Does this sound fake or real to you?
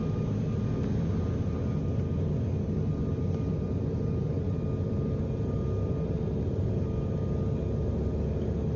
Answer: real